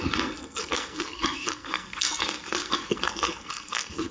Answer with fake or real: fake